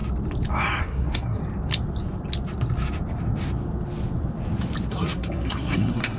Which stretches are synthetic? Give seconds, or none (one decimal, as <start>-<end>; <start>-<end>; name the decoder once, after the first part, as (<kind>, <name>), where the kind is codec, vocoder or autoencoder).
0.8-1.4 (codec, SNAC); 4.9-6.2